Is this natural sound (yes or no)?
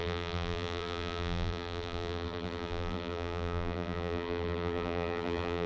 no